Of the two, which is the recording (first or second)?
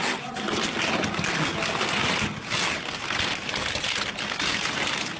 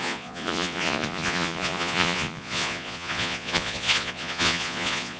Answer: first